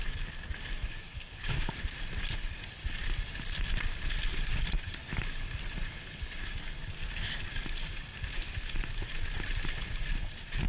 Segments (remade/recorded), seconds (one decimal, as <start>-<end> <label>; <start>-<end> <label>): 0.0-10.7 recorded